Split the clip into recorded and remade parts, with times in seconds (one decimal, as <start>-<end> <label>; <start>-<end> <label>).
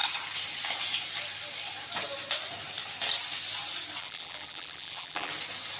0.0-4.0 recorded; 4.0-5.3 remade; 5.3-5.8 recorded